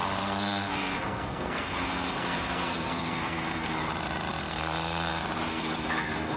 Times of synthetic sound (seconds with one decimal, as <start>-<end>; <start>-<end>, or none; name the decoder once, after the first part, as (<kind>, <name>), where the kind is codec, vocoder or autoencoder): 0.0-3.8 (codec, SNAC); 4.4-5.1; 5.5-6.4